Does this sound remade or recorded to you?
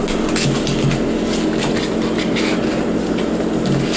recorded